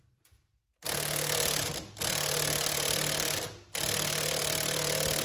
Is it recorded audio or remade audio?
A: recorded